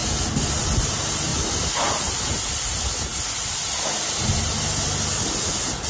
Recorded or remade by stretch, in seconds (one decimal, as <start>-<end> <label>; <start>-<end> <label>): 0.0-0.9 remade; 0.9-1.3 recorded; 1.3-2.1 remade; 2.1-5.9 recorded